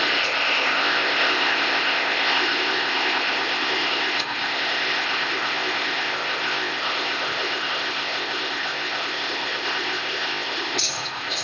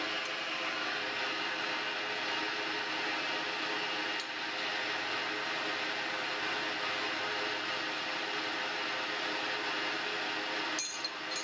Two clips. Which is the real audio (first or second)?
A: second